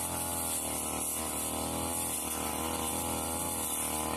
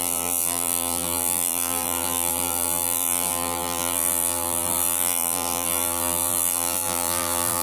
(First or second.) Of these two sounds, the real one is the first